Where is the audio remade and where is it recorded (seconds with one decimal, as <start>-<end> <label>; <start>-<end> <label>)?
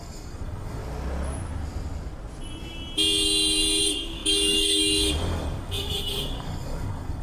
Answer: 0.0-0.8 remade; 0.8-3.8 recorded; 3.8-7.2 remade